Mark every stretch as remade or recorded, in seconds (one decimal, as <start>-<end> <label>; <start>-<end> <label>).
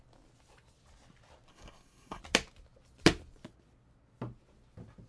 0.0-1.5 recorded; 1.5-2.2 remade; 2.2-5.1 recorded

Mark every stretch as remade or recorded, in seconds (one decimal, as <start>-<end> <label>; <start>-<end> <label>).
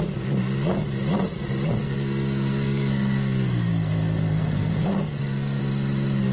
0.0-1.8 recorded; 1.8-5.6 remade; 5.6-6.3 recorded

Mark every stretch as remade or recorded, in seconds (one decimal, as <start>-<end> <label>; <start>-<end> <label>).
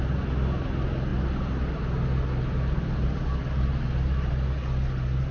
0.0-5.3 recorded